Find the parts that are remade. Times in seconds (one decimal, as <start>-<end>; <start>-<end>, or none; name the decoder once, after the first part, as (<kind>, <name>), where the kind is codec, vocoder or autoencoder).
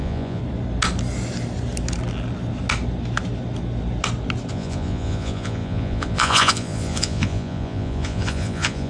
0.0-0.4 (vocoder, Vocos); 4.5-8.9